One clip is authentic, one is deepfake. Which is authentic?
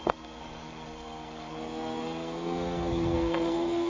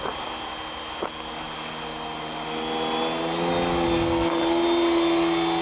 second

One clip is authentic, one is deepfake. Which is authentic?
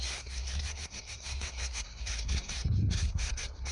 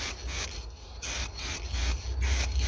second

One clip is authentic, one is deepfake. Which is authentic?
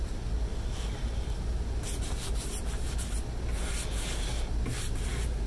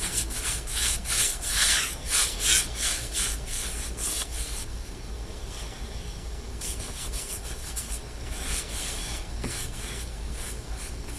first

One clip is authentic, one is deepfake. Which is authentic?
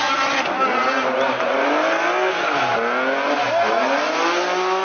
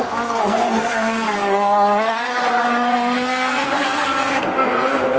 first